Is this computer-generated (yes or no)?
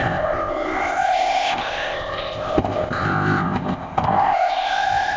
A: yes